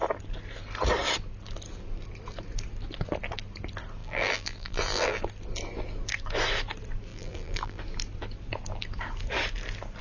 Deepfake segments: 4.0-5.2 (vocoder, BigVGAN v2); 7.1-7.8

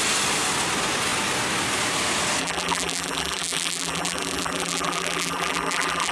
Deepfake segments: 2.4-6.1 (vocoder, BigVGAN v2)

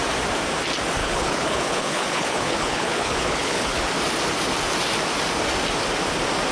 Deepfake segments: 1.0-3.8 (codec, HILCodec)

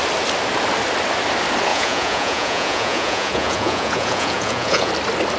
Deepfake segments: 1.7-4.9 (vocoder, Vocos)

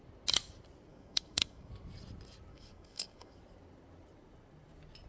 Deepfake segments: 0.9-1.7 (codec, DAC); 2.5-3.4

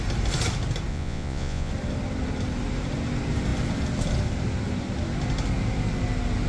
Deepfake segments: 0.9-1.7 (vocoder, Vocos)